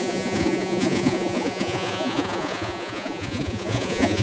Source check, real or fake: fake